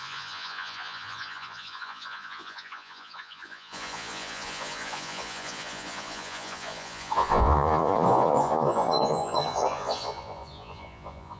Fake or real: fake